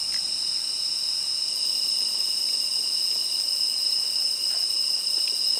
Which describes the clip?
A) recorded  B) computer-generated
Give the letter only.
A